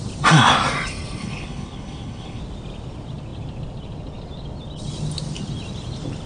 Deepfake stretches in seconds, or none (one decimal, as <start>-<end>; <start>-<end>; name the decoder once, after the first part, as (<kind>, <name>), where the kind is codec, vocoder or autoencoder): 1.2-2.4 (codec, HILCodec)